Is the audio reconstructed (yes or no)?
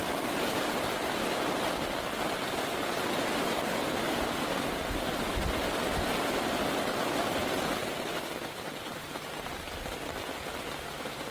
no